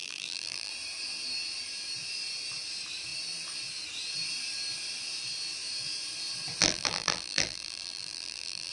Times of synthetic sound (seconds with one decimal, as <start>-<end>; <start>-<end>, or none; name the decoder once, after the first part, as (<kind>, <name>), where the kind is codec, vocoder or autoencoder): 0.0-0.7 (vocoder, BigVGAN v2); 6.6-8.7